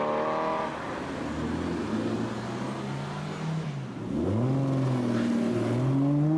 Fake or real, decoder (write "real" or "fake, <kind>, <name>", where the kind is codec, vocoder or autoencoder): real